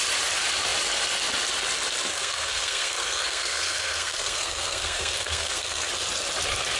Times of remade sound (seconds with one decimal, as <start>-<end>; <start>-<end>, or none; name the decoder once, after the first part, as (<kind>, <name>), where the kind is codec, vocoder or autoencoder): 2.1-5.9 (codec, SNAC)